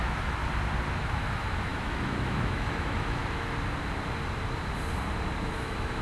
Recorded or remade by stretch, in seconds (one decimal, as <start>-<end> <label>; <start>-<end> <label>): 0.0-0.4 remade; 0.4-0.9 recorded; 0.9-3.2 remade; 3.2-5.4 recorded; 5.4-6.0 remade

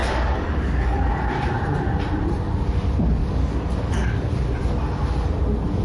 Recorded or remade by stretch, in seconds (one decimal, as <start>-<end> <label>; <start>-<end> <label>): 0.0-1.1 remade; 1.1-3.2 recorded; 3.2-4.3 remade; 4.3-5.8 recorded